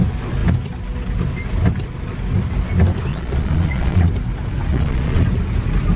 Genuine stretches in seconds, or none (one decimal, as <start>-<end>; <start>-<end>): 0.0-3.1; 4.1-4.7; 5.2-6.0